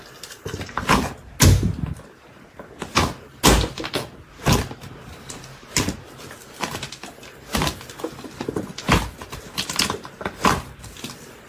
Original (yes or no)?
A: yes